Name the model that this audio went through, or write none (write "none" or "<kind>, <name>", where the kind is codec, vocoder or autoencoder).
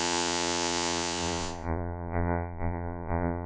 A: vocoder, Vocos